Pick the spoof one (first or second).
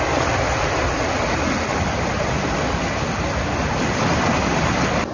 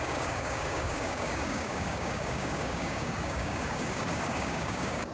second